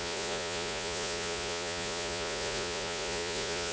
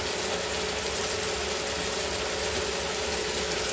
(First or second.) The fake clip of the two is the first